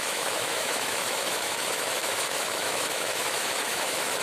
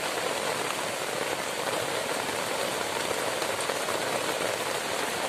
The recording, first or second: second